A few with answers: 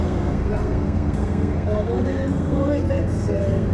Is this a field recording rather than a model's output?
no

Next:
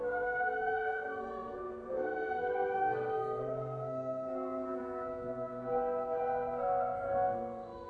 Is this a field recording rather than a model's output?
no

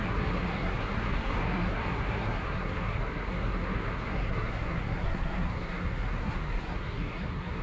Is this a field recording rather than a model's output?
no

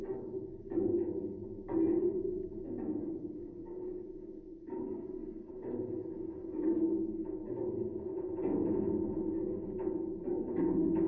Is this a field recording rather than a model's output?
yes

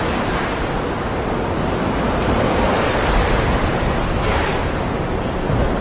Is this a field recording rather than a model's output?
yes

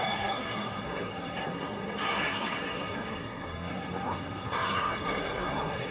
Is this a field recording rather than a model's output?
no